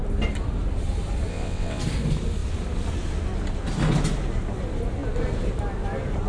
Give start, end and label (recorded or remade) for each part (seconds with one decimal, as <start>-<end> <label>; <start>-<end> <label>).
0.0-1.3 recorded; 1.3-1.8 remade; 1.8-6.3 recorded